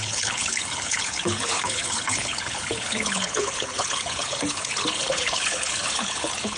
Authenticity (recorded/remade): remade